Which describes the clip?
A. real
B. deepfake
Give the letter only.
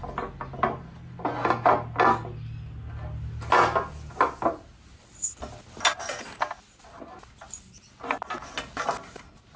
A